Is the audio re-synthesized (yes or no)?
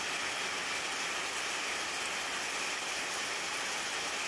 no